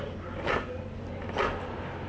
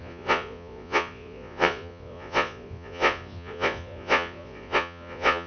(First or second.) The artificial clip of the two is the second